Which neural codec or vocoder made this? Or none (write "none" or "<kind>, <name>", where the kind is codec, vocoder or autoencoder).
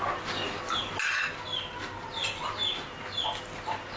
none